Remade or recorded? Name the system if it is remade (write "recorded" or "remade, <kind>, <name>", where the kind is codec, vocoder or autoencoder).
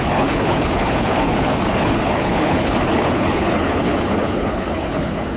remade, codec, HILCodec